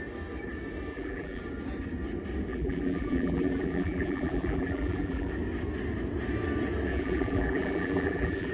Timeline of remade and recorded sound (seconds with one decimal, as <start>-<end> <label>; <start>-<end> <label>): 0.0-0.9 recorded; 0.9-1.4 remade; 1.4-2.5 recorded; 2.5-5.3 remade; 5.3-6.9 recorded; 6.9-8.5 remade